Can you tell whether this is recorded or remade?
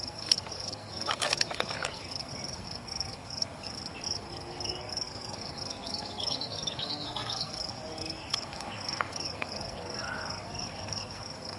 remade